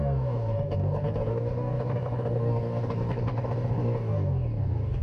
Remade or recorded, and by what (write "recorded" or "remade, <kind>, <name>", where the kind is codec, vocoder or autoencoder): remade, codec, DAC